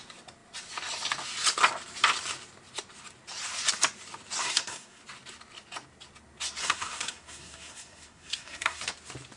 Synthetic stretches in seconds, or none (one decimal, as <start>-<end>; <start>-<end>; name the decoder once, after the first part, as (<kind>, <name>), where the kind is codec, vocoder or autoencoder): 4.4-5.0 (codec, SNAC); 6.6-8.8